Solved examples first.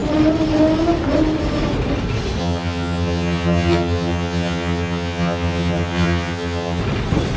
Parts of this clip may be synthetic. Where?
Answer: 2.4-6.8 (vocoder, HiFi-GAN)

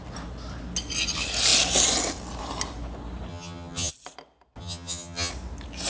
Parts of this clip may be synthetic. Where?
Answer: 3.3-3.9 (vocoder, HiFi-GAN); 4.6-5.3

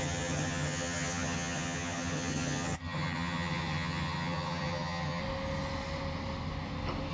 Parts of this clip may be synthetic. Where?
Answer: 0.0-5.2 (vocoder, HiFi-GAN)

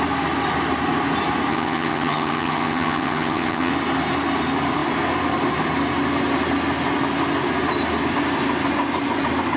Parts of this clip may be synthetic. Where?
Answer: 1.5-3.7 (vocoder, HiFi-GAN)

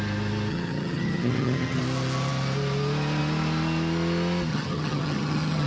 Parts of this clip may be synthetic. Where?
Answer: 0.5-1.8 (vocoder, HiFi-GAN); 4.5-5.7

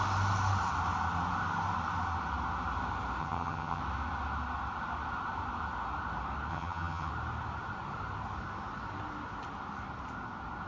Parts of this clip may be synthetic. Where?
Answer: 3.2-3.8 (vocoder, HiFi-GAN); 6.5-7.1

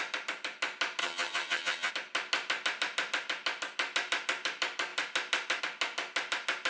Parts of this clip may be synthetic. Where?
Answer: 1.0-1.9 (vocoder, HiFi-GAN)

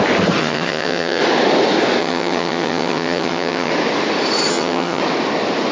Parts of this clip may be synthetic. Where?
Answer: 0.4-1.2 (vocoder, HiFi-GAN); 2.0-3.7; 4.5-5.0